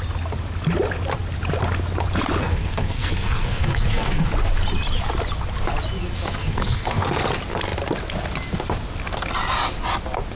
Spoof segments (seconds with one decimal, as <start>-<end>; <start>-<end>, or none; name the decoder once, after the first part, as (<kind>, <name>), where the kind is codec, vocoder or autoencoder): 2.4-4.3 (codec, SNAC); 6.4-7.2